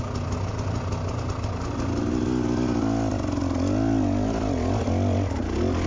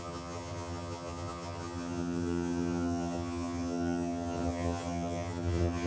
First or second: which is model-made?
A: second